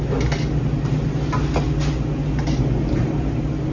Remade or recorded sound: recorded